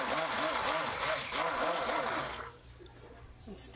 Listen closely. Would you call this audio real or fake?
real